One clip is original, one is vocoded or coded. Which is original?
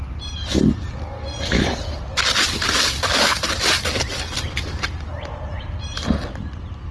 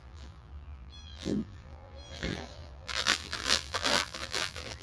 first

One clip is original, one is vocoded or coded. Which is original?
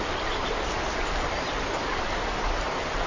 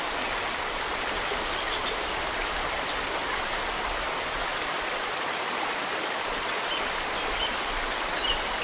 first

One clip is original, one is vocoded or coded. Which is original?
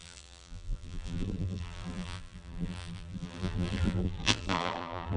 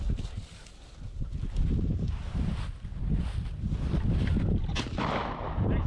second